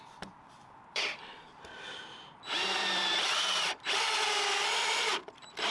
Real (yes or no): no